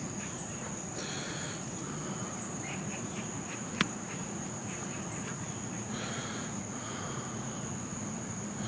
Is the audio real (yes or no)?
no